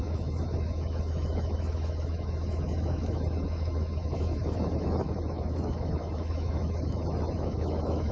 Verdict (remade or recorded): remade